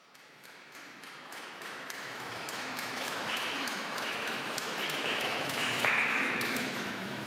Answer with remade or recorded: remade